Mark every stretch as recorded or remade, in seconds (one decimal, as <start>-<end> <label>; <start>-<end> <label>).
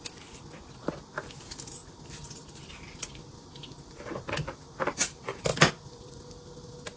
0.0-7.0 recorded